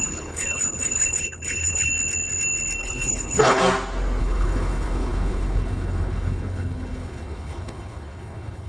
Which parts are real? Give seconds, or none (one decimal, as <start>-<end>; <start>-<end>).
1.9-2.8; 3.6-4.2